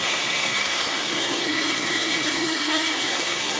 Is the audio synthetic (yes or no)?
yes